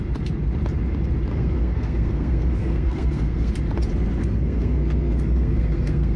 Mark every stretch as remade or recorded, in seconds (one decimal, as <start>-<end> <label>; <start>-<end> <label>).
0.0-1.3 recorded; 1.3-3.5 remade; 3.5-4.2 recorded; 4.2-6.2 remade

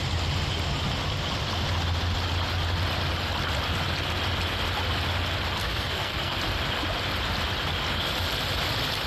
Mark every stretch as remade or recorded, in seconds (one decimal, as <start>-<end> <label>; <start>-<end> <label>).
0.0-5.6 recorded; 5.6-6.4 remade; 6.4-9.1 recorded

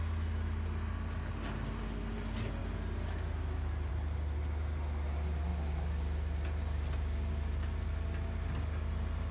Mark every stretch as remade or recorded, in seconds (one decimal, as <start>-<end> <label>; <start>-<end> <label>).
0.0-9.3 recorded

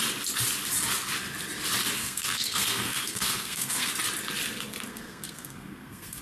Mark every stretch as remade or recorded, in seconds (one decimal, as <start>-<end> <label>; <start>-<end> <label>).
0.0-2.0 recorded; 2.0-3.9 remade; 3.9-4.9 recorded; 4.9-6.2 remade

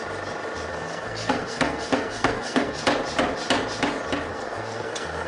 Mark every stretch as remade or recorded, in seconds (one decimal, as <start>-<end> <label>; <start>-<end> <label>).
0.0-0.7 recorded; 0.7-2.8 remade; 2.8-4.3 recorded; 4.3-5.3 remade